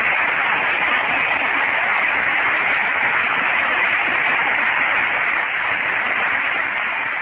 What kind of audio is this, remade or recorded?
recorded